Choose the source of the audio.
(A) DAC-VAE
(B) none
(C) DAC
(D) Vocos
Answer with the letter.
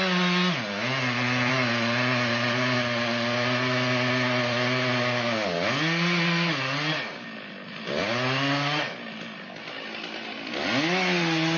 B